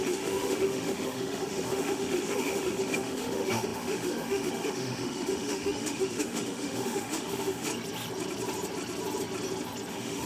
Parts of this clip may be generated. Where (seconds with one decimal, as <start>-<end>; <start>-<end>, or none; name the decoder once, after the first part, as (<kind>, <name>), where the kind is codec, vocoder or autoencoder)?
0.0-7.7 (autoencoder, DAC-VAE); 9.9-10.3